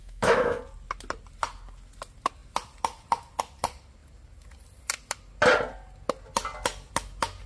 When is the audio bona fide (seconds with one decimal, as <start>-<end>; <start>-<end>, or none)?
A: 0.6-7.5